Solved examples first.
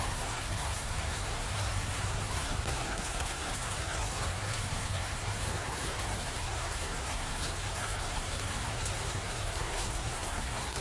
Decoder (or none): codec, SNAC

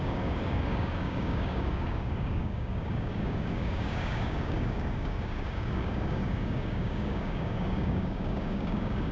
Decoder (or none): codec, DAC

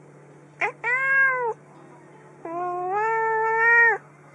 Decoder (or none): none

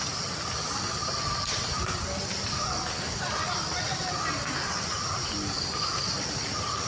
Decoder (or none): vocoder, BigVGAN v2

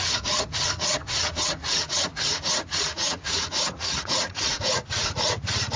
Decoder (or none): vocoder, Vocos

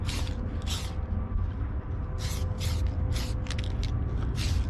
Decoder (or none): none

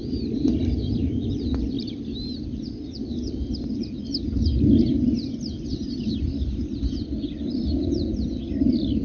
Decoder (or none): none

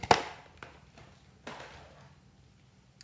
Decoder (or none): none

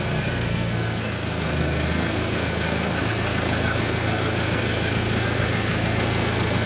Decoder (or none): codec, SNAC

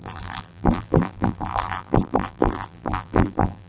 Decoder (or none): vocoder, BigVGAN v2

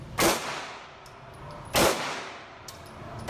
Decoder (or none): none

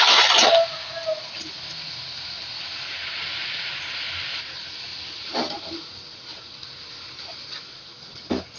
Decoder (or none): none